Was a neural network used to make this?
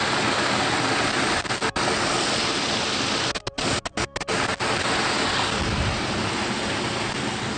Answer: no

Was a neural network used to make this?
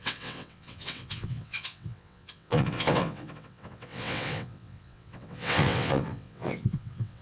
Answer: yes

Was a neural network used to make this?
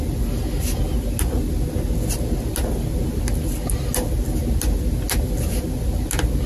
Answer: no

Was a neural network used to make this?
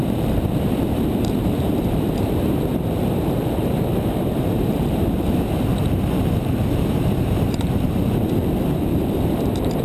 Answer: yes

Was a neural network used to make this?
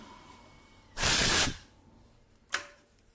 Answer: yes